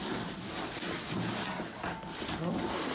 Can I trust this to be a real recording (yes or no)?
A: yes